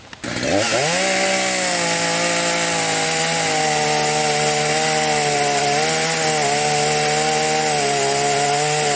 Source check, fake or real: real